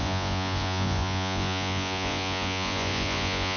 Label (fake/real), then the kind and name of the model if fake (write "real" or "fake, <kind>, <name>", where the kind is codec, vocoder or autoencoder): fake, vocoder, Vocos